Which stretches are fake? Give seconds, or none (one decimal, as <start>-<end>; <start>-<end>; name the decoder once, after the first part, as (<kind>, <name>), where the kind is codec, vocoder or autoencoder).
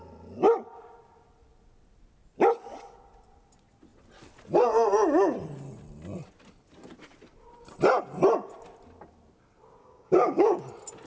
9.8-10.6 (codec, DAC)